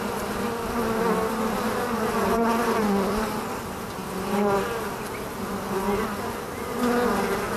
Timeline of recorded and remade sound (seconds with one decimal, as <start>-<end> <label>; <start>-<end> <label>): 0.0-7.6 recorded

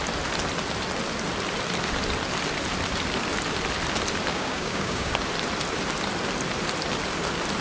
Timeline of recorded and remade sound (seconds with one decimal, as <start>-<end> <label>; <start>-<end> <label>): 0.0-4.3 recorded; 4.3-5.1 remade; 5.1-7.6 recorded

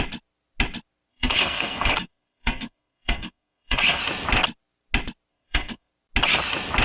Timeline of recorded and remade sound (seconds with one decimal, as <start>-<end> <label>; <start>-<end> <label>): 0.0-1.1 recorded; 1.1-4.0 remade; 4.0-5.3 recorded; 5.3-5.9 remade; 5.9-6.8 recorded

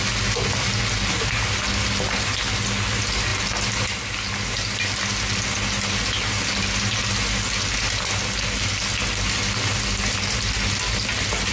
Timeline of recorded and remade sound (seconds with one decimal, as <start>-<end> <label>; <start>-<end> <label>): 0.0-11.5 recorded

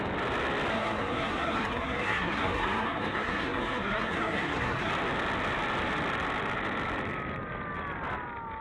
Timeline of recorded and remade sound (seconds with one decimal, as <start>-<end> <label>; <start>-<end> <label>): 0.0-0.7 recorded; 0.7-4.9 remade; 4.9-8.6 recorded

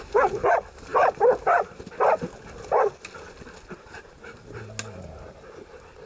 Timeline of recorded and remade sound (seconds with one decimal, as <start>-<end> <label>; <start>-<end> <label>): 0.0-6.1 recorded